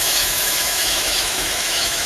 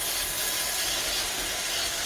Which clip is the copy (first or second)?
first